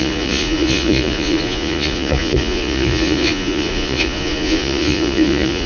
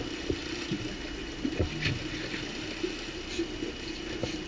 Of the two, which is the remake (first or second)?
first